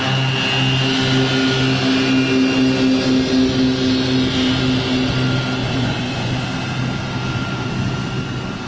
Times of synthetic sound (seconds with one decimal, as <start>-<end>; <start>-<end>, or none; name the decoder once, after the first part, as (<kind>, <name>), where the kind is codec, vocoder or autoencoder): 5.6-6.3 (vocoder, Vocos)